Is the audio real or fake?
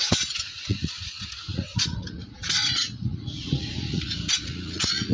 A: fake